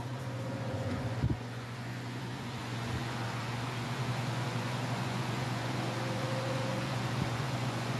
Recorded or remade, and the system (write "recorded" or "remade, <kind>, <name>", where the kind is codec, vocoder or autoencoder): remade, vocoder, Vocos